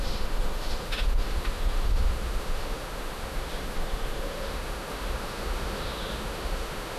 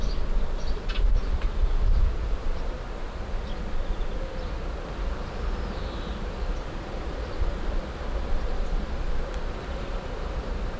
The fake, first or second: first